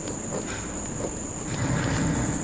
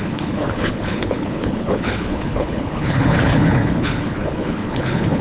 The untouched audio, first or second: first